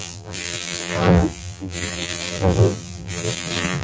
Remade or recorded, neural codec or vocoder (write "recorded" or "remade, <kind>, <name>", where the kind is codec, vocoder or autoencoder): remade, vocoder, BigVGAN v2